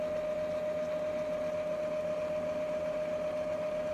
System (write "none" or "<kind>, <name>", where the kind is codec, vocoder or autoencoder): none